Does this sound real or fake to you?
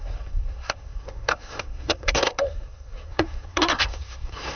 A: fake